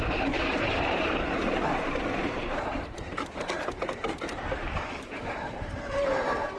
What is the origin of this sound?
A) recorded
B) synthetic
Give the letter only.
B